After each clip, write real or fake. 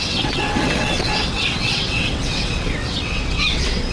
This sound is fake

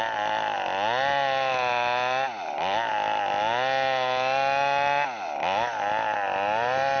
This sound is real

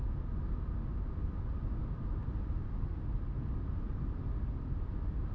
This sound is real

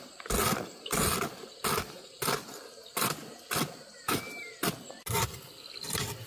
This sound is real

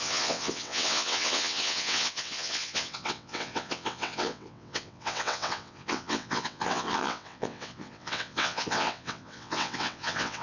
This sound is fake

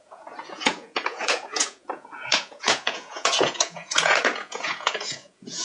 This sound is fake